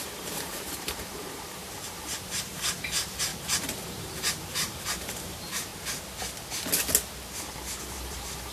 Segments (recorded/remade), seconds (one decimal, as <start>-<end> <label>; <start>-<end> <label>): 0.0-3.3 remade; 3.3-3.9 recorded; 3.9-5.7 remade; 5.7-7.8 recorded; 7.8-8.5 remade

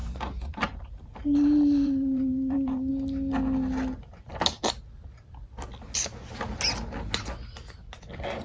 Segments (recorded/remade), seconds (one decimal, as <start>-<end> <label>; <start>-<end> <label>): 0.0-2.9 remade; 2.9-8.4 recorded

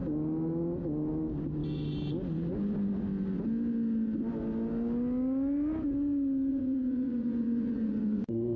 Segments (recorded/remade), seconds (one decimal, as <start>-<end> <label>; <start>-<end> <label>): 0.0-6.5 recorded; 6.5-8.6 remade

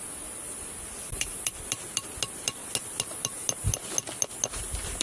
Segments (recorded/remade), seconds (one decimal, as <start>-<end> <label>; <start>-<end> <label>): 0.0-5.0 recorded